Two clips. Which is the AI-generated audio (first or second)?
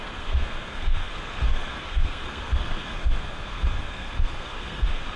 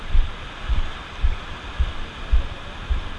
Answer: first